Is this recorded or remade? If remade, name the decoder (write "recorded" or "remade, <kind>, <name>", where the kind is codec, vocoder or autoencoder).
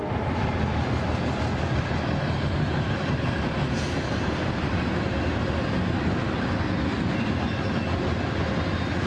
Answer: recorded